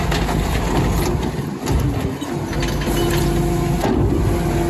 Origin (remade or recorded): recorded